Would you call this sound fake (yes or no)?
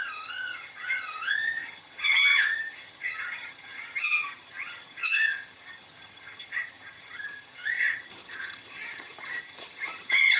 yes